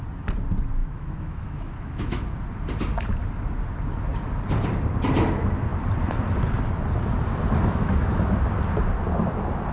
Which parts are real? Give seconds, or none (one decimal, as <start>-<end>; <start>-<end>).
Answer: 0.0-0.8; 2.2-7.6; 8.2-9.7